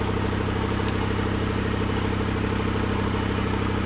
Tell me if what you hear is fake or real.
real